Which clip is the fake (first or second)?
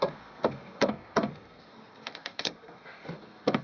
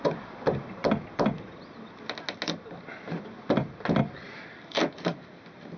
first